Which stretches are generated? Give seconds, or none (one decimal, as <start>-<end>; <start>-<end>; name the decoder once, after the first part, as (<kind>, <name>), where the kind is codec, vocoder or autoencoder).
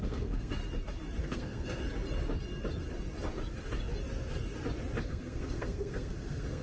0.0-0.6 (codec, SNAC); 1.2-1.8; 5.0-6.6